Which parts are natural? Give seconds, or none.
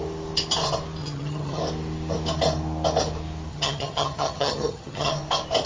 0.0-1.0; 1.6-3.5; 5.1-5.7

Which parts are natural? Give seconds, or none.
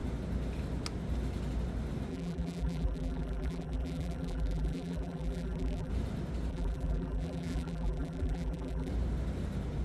0.0-2.1; 5.9-6.5; 8.9-9.8